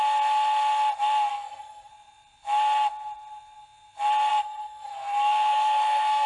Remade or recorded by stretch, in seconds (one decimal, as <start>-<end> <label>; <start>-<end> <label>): 0.0-1.3 recorded; 1.3-1.9 remade; 1.9-4.3 recorded; 4.3-6.3 remade